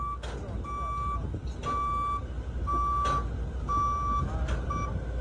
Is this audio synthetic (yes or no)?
no